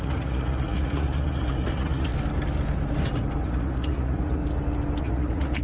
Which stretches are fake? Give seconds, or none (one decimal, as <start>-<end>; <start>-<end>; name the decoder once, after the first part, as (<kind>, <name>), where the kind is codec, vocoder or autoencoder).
0.0-2.1 (vocoder, Vocos); 3.4-4.4; 5.0-5.6